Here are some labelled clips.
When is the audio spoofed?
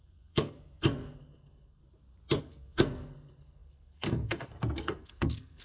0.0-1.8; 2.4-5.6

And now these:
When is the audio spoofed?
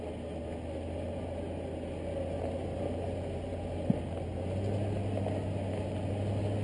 none